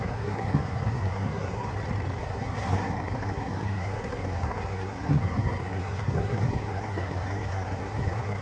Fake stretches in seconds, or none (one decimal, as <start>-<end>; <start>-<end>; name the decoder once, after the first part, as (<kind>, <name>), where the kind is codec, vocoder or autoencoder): 0.0-1.7 (codec, SNAC); 2.2-8.4